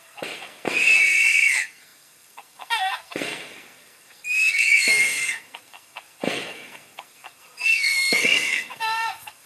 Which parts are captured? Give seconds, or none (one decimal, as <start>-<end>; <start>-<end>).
none